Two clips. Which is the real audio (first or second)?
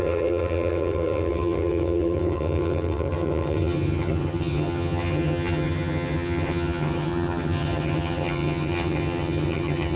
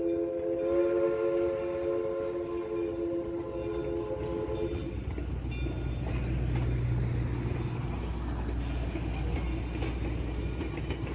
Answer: second